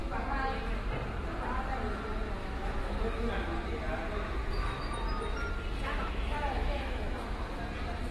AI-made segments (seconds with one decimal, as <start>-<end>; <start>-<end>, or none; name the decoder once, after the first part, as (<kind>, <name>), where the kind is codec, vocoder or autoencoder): 2.4-3.3 (autoencoder, DAC-VAE); 4.4-4.9; 5.9-7.6